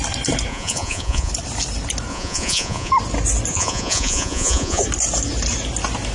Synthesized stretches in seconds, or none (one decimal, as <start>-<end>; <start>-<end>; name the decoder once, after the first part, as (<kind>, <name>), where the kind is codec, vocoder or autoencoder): 0.5-1.3 (vocoder, Vocos); 2.1-2.9; 3.5-4.8